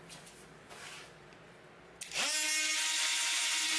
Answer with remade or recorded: recorded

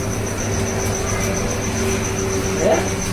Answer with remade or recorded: recorded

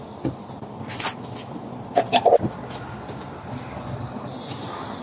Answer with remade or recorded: recorded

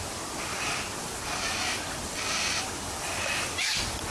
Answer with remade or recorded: remade